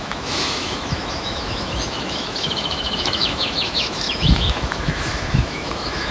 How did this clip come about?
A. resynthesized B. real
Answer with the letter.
A